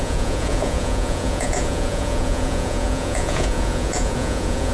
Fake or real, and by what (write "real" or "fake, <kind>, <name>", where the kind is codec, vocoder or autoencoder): fake, vocoder, Vocos